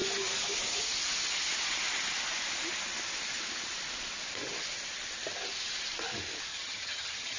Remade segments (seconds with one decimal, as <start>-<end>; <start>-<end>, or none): 6.5-7.4